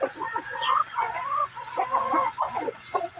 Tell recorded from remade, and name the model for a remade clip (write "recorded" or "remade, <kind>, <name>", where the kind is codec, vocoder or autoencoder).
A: remade, vocoder, Vocos